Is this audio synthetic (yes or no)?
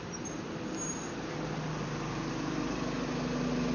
no